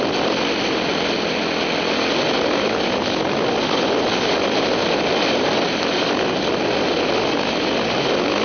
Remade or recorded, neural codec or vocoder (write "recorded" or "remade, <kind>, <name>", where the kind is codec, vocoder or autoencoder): recorded